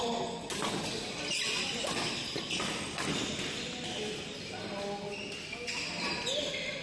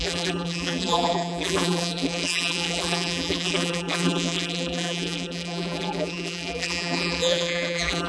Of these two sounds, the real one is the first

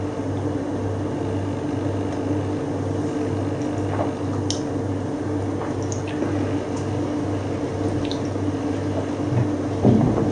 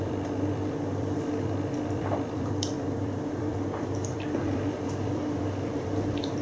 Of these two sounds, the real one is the first